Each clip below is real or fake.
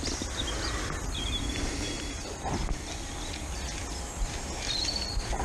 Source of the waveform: real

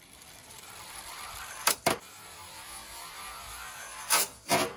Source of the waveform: fake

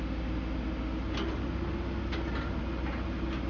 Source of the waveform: real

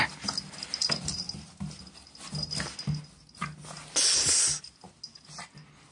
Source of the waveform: real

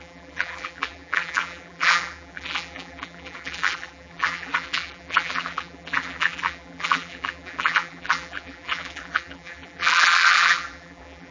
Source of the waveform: fake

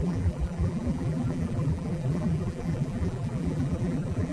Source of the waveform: fake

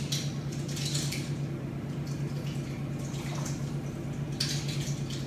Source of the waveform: real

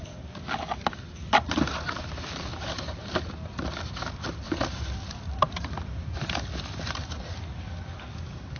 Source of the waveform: fake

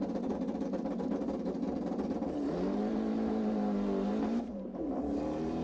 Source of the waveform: fake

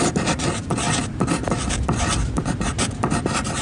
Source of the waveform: fake